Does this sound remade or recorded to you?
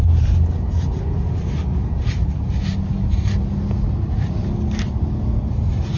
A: recorded